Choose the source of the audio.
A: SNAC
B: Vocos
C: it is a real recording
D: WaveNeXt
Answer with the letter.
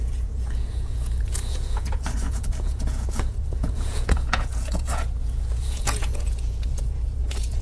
B